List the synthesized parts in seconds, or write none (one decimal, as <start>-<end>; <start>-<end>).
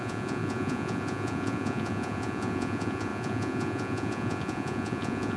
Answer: 0.0-5.4